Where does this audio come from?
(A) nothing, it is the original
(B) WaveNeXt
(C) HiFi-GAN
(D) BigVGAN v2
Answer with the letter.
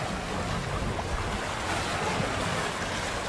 A